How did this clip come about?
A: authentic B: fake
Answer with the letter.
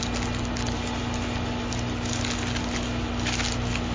A